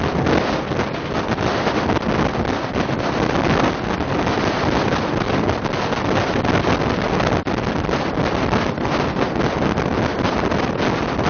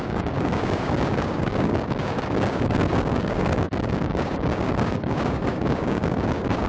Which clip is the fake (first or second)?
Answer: second